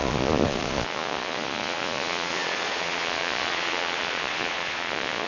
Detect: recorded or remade remade